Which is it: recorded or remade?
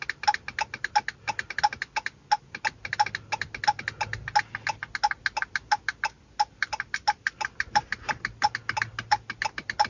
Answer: recorded